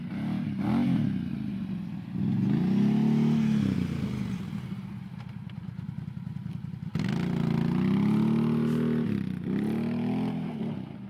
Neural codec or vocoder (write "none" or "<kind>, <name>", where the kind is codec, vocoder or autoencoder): none